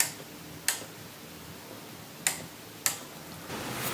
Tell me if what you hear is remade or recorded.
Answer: recorded